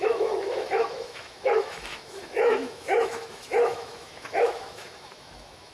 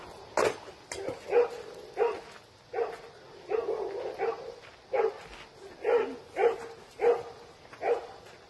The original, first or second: second